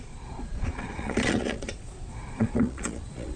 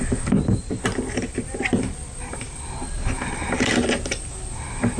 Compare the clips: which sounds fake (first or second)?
first